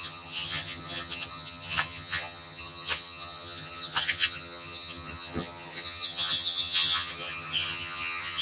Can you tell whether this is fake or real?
fake